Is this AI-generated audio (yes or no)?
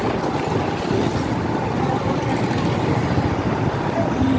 no